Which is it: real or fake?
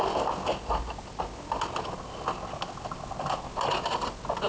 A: real